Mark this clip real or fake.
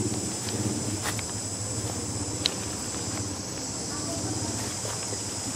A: real